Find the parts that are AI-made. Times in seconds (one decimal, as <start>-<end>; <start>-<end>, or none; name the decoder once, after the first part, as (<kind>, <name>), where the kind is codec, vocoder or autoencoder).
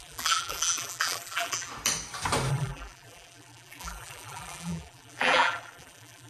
0.0-1.7 (vocoder, BigVGAN v2); 2.5-6.3